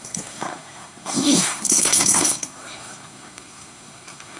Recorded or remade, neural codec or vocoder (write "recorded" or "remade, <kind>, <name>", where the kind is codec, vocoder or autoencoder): remade, codec, SNAC